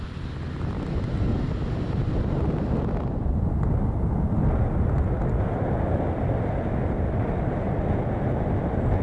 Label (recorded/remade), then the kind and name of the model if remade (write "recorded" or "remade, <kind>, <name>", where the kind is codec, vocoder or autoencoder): recorded